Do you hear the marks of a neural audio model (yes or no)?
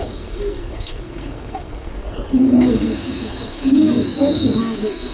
yes